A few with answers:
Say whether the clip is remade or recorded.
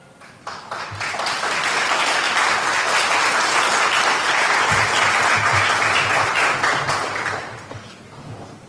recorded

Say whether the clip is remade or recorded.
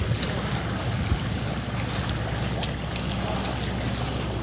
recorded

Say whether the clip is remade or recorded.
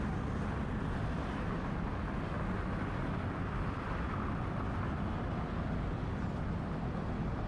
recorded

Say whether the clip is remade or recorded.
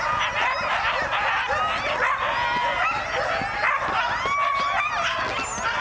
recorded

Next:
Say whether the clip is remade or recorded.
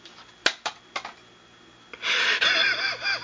recorded